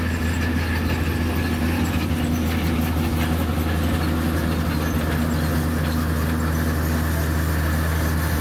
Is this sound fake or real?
real